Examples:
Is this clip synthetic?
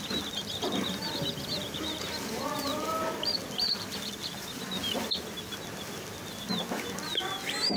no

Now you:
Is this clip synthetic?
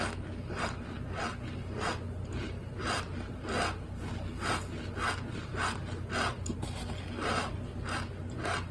no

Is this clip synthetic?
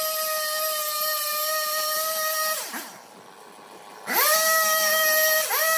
no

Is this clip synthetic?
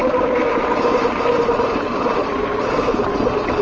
no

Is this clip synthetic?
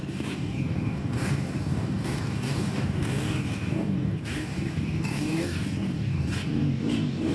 yes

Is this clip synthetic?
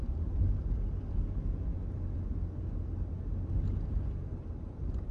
no